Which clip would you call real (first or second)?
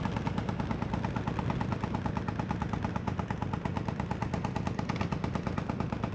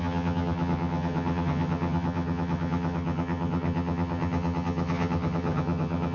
first